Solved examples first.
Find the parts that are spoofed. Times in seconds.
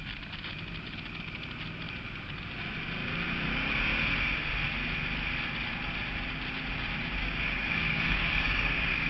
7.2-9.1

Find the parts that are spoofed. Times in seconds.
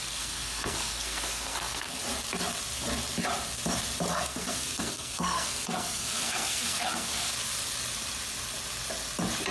0.0-2.0; 4.1-7.3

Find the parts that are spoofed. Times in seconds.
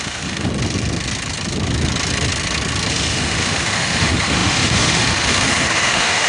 0.0-0.5; 2.9-6.3